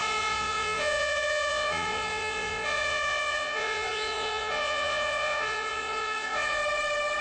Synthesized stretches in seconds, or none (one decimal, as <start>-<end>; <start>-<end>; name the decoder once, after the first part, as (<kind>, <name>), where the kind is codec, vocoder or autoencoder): 0.0-6.6 (vocoder, Vocos)